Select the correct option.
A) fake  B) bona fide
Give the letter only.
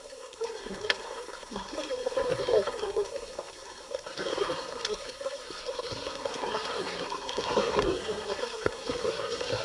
A